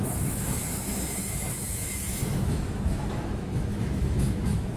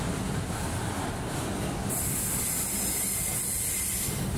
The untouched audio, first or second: second